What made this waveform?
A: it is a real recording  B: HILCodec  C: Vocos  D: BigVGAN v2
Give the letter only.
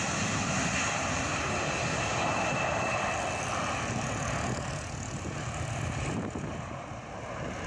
A